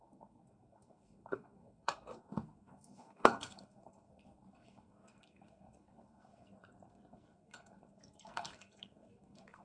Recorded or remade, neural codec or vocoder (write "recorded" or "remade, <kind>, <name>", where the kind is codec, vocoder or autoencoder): remade, codec, SNAC